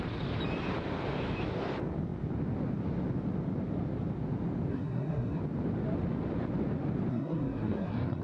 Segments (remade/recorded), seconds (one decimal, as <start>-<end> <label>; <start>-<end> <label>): 0.0-4.7 recorded; 4.7-5.4 remade; 5.4-7.1 recorded; 7.1-8.2 remade